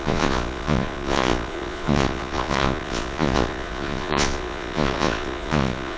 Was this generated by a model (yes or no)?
yes